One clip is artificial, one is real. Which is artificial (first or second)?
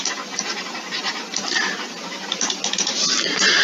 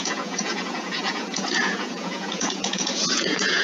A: second